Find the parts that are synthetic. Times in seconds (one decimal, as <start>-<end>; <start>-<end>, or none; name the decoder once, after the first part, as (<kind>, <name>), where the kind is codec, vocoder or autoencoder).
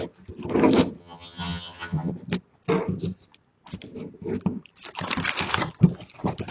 1.0-2.1 (vocoder, HiFi-GAN)